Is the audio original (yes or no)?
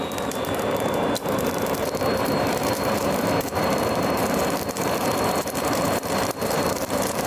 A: no